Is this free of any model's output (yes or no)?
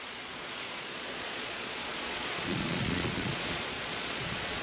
no